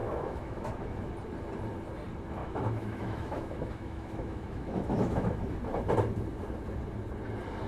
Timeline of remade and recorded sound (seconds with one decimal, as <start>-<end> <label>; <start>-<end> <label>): 0.0-1.1 remade; 1.1-2.4 recorded; 2.4-5.5 remade; 5.5-7.7 recorded